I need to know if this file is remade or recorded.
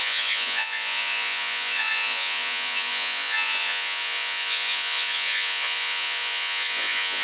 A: remade